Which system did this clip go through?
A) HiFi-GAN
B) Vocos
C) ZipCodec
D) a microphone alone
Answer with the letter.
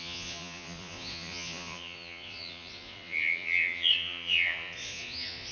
B